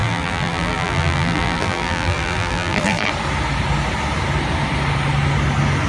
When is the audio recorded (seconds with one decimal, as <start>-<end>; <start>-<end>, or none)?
3.1-5.9